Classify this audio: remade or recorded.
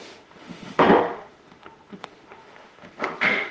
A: remade